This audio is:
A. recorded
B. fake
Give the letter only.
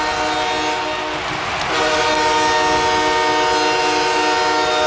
A